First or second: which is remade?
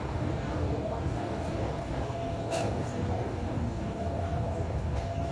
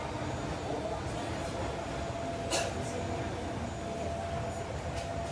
first